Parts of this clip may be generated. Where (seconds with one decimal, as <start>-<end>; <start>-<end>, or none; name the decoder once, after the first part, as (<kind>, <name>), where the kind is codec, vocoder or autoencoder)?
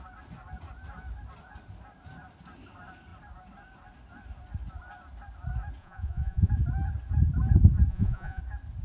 5.8-6.5 (vocoder, Vocos); 7.9-8.4